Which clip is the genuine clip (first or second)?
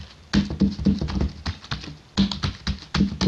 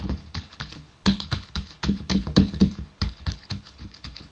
first